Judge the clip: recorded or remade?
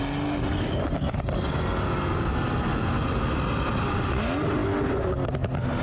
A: recorded